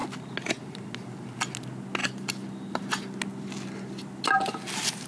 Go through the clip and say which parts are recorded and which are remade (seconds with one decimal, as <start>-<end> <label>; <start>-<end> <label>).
0.0-5.1 recorded